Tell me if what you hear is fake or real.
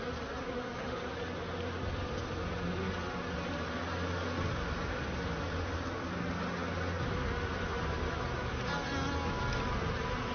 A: real